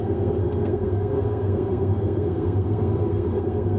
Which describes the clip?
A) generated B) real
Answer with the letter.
A